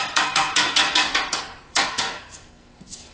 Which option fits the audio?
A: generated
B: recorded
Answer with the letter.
A